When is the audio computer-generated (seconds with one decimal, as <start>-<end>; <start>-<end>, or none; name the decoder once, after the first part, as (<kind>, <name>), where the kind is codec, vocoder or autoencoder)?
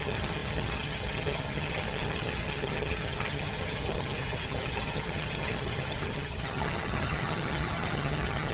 0.0-8.5 (vocoder, HiFi-GAN)